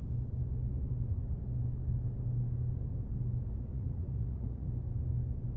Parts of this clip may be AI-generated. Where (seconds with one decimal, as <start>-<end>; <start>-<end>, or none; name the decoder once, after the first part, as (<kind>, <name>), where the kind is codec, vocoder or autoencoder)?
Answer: 3.7-4.7 (vocoder, Vocos)